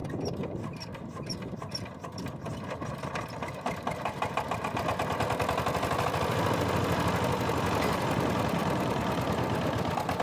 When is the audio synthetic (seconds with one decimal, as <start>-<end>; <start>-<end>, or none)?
8.6-9.2